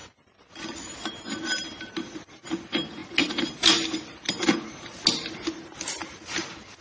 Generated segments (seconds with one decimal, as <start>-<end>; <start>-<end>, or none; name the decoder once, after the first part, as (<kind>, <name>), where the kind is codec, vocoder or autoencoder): none